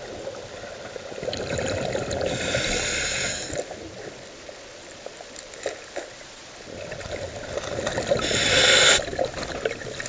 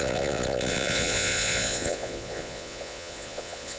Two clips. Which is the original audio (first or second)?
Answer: first